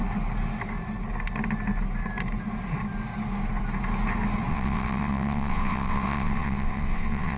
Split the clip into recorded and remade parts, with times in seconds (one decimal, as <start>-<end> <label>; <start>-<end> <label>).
0.0-4.5 recorded; 4.5-7.4 remade